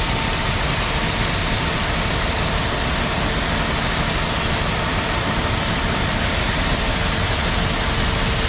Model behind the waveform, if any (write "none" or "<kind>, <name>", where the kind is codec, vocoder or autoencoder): none